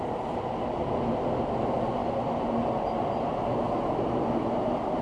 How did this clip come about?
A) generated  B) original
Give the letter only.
B